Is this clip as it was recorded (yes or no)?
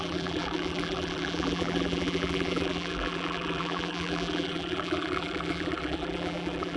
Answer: no